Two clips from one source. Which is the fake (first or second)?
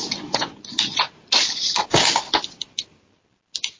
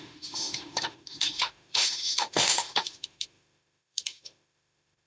second